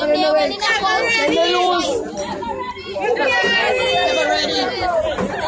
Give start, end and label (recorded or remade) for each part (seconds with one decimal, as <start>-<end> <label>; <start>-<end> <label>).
0.0-1.4 recorded; 1.4-4.7 remade; 4.7-5.5 recorded